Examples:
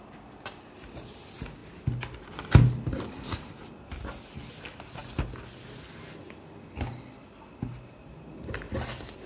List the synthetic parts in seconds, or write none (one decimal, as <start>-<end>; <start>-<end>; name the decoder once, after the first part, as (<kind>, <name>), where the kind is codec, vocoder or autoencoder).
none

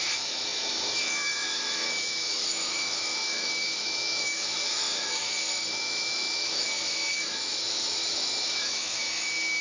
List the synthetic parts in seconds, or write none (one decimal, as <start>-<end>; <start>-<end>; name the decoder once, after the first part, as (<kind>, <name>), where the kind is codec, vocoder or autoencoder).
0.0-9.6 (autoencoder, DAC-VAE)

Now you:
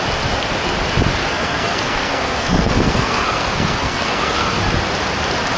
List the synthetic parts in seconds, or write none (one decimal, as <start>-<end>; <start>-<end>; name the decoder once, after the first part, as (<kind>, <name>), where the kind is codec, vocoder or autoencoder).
1.2-4.6 (codec, SNAC)

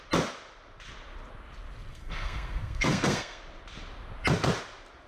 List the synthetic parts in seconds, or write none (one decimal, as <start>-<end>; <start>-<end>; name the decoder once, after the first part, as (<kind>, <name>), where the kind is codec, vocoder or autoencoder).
1.9-3.4 (codec, SNAC)

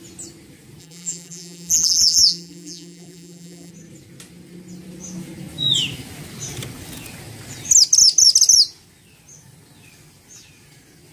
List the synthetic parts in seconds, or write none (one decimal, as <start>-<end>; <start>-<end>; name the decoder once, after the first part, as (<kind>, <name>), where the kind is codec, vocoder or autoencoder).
0.8-3.7 (vocoder, BigVGAN v2)